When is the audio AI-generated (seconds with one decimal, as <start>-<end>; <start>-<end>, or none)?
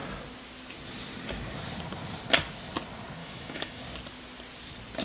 3.2-3.8